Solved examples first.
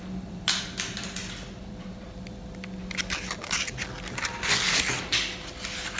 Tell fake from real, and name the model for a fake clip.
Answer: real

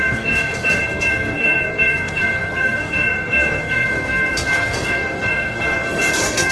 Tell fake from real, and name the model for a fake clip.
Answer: fake, codec, SNAC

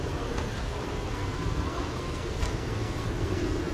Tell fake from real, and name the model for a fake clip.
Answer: fake, codec, SNAC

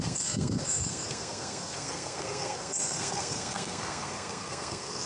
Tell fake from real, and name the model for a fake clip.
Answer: fake, codec, SNAC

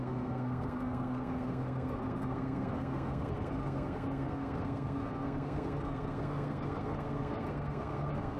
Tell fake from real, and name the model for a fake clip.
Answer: fake, codec, SNAC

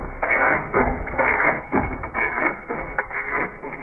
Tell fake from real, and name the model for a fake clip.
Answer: fake, codec, SNAC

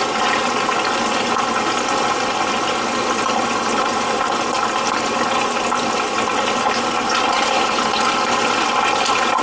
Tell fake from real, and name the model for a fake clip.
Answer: real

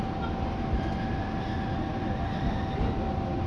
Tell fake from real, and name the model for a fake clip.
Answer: real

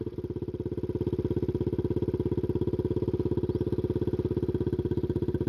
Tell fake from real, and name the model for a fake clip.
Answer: real